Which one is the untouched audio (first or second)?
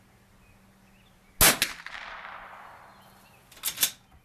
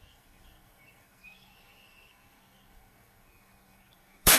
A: first